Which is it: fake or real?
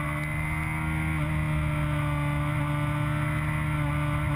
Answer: real